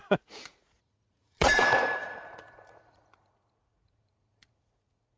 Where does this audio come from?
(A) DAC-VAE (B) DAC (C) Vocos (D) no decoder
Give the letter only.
C